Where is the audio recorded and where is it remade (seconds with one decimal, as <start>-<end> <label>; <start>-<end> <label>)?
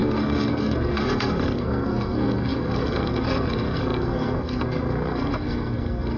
0.0-6.2 remade